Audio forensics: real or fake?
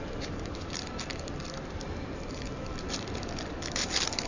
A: fake